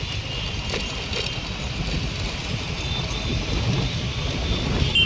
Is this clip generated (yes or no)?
no